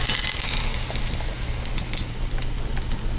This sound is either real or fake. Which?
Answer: real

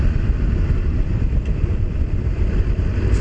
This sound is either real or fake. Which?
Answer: fake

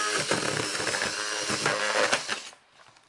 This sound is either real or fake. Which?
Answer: real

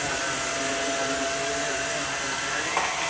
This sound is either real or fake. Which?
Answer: real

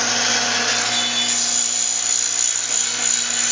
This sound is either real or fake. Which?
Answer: real